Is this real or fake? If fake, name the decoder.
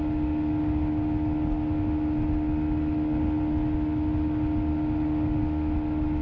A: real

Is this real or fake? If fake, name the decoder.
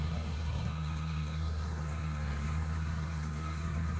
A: fake, codec, SNAC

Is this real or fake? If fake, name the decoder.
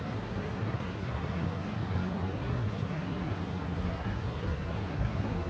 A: fake, codec, SNAC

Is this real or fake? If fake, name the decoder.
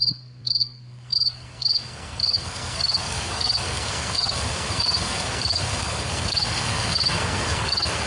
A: fake, codec, SNAC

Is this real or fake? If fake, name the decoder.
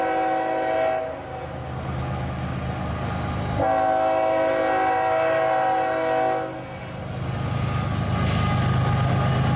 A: real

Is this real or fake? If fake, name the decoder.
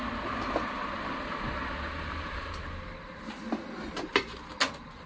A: real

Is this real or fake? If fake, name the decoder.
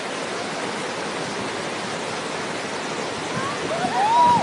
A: real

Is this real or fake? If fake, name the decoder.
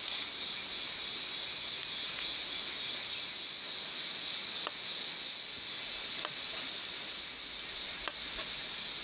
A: real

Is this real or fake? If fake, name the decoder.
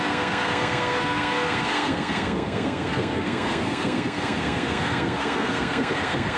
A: fake, codec, SNAC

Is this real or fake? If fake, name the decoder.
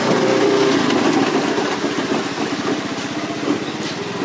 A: real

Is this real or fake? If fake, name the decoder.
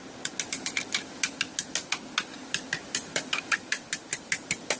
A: real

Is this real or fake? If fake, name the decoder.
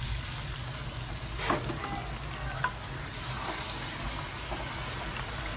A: real